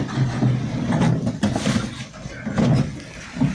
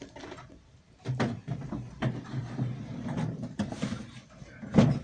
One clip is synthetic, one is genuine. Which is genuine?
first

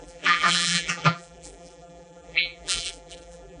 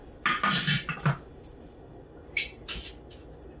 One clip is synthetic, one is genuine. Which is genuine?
second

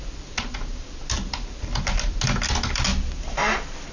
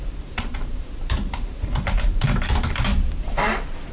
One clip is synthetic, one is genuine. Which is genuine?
first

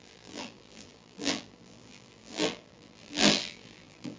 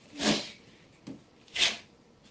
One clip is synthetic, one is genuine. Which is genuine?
second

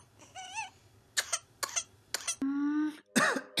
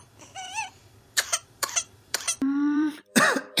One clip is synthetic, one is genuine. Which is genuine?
first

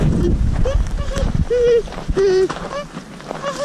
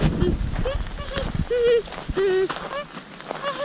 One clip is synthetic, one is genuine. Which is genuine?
second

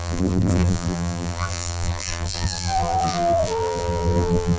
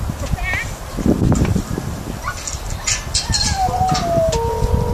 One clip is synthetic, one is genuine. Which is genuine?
second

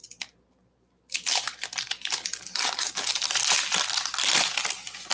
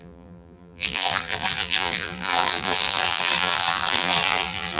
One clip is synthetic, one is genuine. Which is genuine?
first